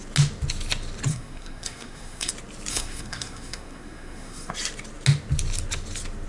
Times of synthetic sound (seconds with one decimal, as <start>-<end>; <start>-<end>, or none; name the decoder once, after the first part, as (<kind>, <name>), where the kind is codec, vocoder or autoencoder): 1.1-2.3 (codec, SNAC); 2.7-4.5